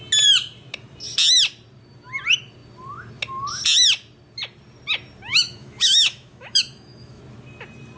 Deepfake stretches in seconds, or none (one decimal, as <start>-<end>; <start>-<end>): 5.3-7.2

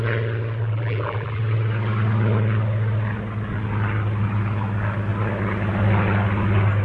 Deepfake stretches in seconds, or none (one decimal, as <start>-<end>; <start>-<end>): 0.6-1.4